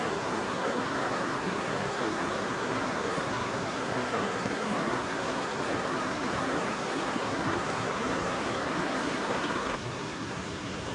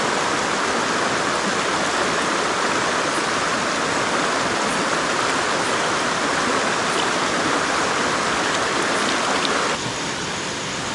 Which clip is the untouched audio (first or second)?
second